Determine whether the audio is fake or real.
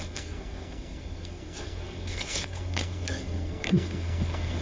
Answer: fake